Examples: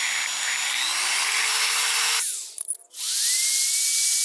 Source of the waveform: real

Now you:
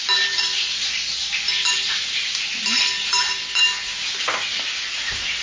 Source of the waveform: real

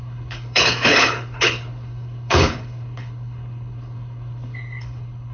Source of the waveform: fake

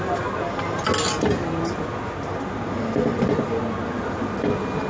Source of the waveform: real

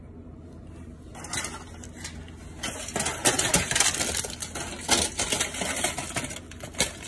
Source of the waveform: real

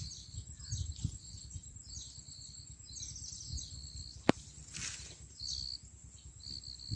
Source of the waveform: real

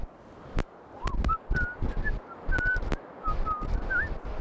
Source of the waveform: real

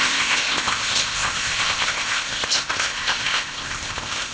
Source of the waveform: fake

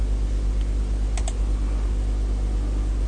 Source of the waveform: real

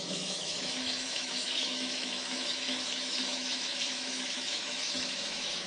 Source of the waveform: fake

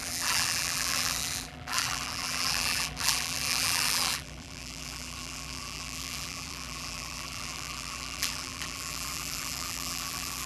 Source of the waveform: fake